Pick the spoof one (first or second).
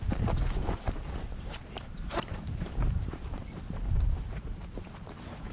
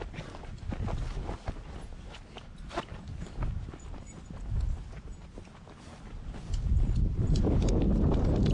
first